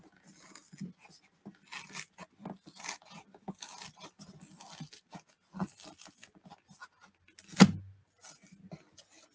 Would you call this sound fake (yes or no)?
no